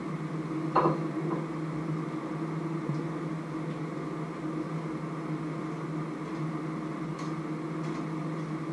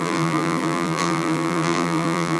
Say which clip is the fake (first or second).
second